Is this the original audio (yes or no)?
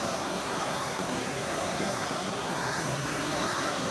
no